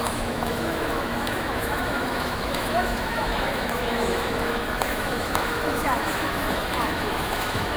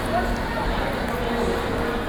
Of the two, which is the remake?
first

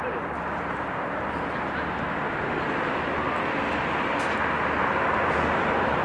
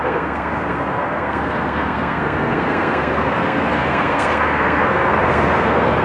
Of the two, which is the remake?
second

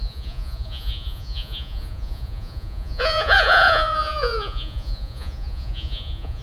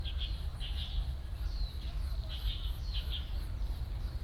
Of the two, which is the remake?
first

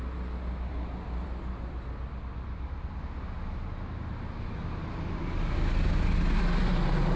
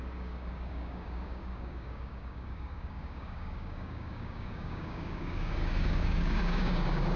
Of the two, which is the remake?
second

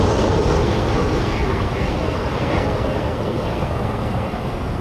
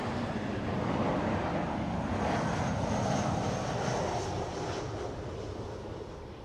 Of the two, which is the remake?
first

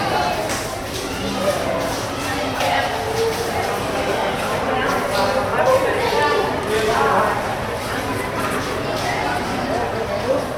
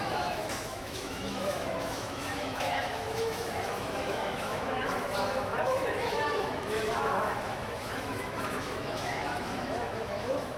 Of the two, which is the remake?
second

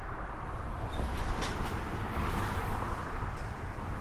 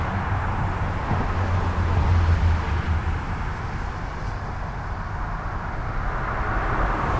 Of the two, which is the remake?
first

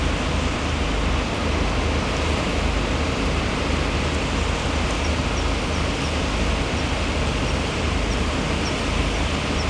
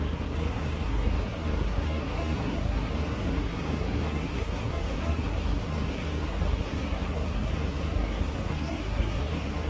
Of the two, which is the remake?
second